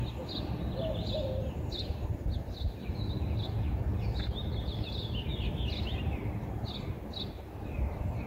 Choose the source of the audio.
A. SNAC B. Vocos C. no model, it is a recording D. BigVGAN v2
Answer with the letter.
C